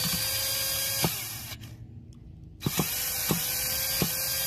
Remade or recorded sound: recorded